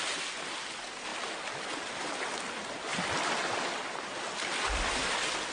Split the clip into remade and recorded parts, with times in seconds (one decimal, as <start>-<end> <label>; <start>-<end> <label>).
0.0-5.5 recorded